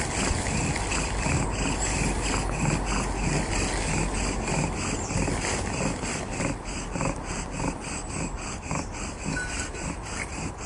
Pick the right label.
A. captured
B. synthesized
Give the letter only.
A